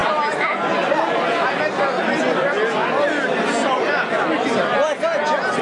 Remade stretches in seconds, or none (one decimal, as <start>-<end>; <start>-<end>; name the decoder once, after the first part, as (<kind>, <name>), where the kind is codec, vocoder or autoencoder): none